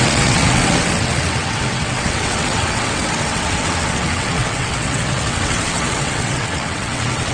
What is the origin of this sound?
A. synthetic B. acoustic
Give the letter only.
A